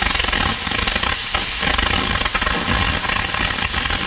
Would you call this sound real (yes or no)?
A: yes